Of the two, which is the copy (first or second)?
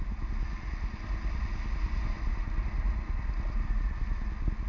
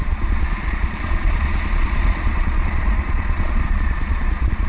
second